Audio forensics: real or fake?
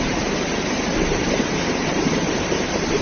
fake